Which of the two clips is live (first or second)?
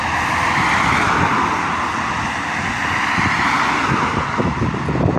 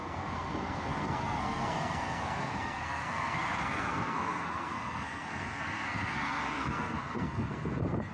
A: first